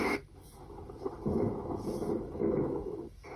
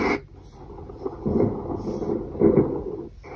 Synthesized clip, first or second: first